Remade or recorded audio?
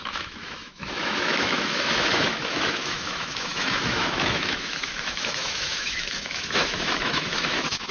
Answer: remade